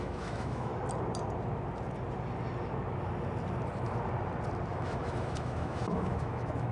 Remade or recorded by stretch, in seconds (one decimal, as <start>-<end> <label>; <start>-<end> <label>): 0.0-0.7 remade; 0.7-4.7 recorded; 4.7-6.7 remade